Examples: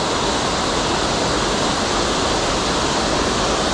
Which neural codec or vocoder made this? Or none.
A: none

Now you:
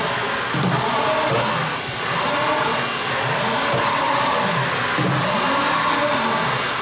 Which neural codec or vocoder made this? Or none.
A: none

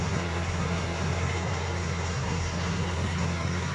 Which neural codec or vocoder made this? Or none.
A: codec, SNAC